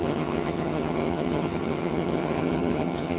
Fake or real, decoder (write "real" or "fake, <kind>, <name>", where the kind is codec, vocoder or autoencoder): fake, vocoder, HiFi-GAN